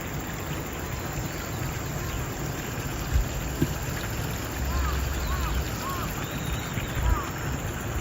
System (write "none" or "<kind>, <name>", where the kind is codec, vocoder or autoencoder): none